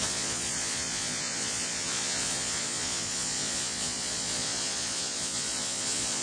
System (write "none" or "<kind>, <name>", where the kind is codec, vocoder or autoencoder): vocoder, Vocos